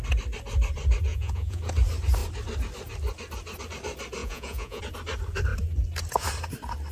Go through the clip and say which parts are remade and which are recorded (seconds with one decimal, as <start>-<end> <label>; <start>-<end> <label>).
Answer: 0.0-1.1 recorded; 1.1-1.6 remade; 1.6-4.2 recorded; 4.2-4.8 remade; 4.8-6.9 recorded